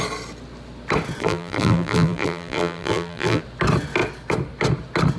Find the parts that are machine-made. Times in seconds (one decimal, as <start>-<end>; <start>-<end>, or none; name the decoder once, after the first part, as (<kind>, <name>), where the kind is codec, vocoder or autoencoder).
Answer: 1.2-3.4 (vocoder, BigVGAN v2)